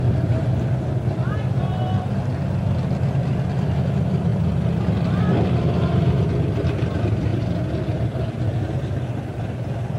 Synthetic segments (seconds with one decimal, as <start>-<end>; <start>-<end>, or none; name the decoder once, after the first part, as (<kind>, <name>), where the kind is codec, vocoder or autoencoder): 0.0-4.3 (vocoder, BigVGAN v2); 5.2-7.3; 8.4-10.0